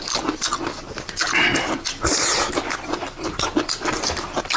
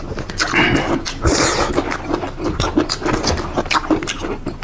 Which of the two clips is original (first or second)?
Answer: second